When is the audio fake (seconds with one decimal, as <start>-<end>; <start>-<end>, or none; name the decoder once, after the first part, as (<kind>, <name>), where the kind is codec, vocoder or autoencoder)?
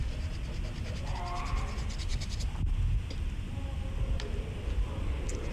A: none